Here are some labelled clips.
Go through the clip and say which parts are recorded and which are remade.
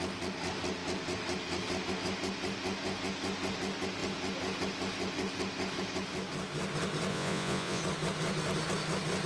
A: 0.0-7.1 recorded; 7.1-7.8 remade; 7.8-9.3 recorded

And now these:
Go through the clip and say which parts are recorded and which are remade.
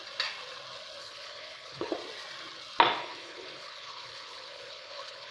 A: 0.0-1.0 recorded; 1.0-1.9 remade; 1.9-3.0 recorded; 3.0-5.3 remade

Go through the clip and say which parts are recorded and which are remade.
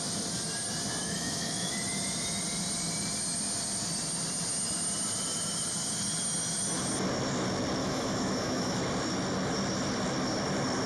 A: 0.0-1.0 recorded; 1.0-1.7 remade; 1.7-7.8 recorded; 7.8-8.8 remade; 8.8-10.9 recorded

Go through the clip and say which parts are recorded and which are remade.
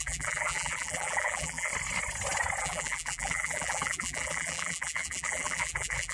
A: 0.0-1.7 remade; 1.7-2.6 recorded; 2.6-6.1 remade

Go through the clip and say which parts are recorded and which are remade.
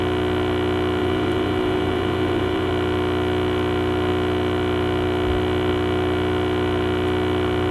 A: 0.0-1.0 recorded; 1.0-2.7 remade; 2.7-7.7 recorded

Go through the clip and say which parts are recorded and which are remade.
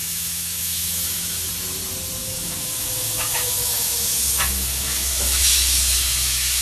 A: 0.0-1.5 remade; 1.5-2.2 recorded; 2.2-6.6 remade